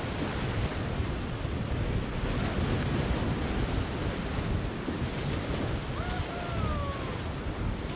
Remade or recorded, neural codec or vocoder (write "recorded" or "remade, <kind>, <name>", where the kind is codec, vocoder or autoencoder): recorded